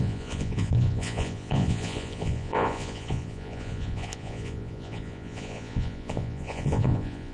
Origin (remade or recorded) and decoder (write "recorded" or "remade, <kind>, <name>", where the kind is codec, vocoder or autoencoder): remade, vocoder, Vocos